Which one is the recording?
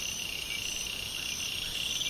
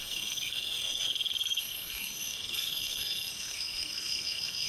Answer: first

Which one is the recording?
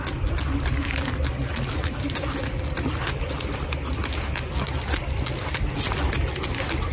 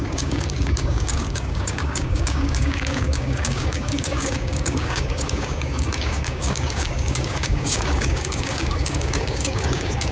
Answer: first